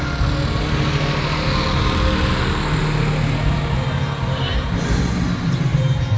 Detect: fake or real real